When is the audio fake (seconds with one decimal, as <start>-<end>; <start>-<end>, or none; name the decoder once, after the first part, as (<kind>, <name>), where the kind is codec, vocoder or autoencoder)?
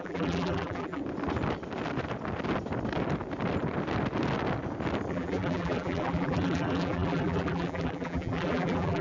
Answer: 0.0-1.0 (vocoder, BigVGAN v2); 5.1-9.0